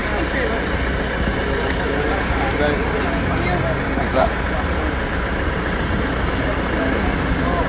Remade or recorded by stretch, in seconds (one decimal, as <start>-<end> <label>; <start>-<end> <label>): 0.0-7.7 recorded